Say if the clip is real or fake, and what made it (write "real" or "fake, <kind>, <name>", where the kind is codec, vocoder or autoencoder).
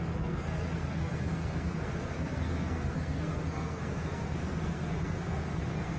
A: fake, codec, SNAC